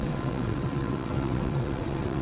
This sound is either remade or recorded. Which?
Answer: remade